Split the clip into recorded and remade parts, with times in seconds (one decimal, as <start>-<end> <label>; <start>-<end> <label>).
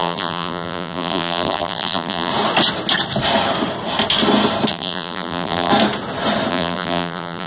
0.0-2.3 remade; 2.3-4.7 recorded; 4.7-5.7 remade; 5.7-6.5 recorded; 6.5-7.5 remade